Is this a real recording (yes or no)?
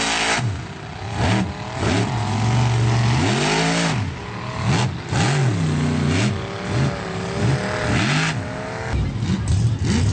yes